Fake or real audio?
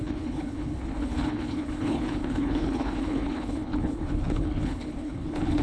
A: fake